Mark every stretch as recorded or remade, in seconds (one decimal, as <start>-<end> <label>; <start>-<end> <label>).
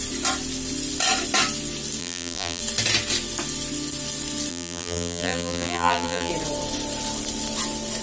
0.0-2.0 recorded; 2.0-2.6 remade; 2.6-4.5 recorded; 4.5-6.3 remade; 6.3-8.0 recorded